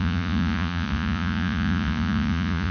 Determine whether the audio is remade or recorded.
remade